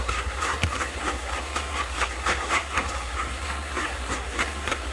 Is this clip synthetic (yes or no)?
yes